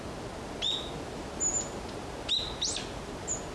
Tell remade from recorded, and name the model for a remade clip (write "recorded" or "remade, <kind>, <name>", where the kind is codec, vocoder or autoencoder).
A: recorded